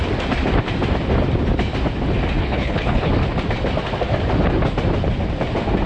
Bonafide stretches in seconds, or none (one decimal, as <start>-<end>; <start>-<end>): 0.0-2.4; 3.1-5.9